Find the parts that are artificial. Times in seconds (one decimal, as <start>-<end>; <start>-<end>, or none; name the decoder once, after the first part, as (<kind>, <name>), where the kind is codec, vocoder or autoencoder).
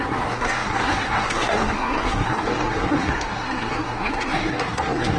0.0-5.2 (codec, SNAC)